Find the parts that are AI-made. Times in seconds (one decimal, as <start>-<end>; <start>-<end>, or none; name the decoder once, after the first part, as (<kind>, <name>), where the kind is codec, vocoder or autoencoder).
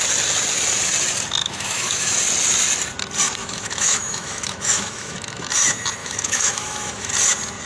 1.4-2.2 (autoencoder, DAC-VAE); 3.4-5.5; 6.0-7.1